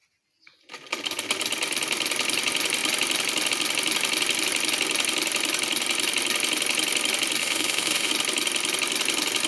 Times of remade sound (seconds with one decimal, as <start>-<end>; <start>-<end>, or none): 7.4-8.1